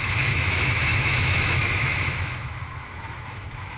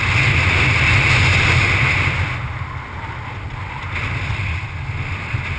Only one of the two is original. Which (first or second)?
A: second